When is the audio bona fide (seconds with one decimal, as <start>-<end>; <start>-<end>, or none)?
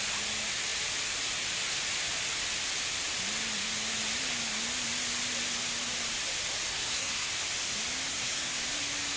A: 0.0-6.7; 7.3-8.1; 8.6-9.2